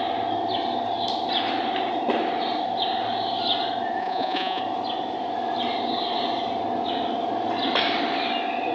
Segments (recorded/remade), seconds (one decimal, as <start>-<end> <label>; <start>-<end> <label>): 0.0-4.0 recorded; 4.0-4.6 remade; 4.6-8.7 recorded